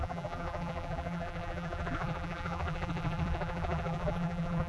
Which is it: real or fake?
fake